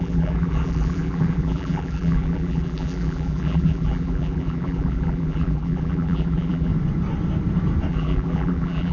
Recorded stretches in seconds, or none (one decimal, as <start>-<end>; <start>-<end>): 6.7-7.9